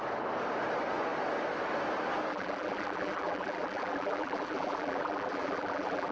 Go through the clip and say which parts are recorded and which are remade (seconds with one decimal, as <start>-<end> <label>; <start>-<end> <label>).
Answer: 0.0-2.3 recorded; 2.3-6.1 remade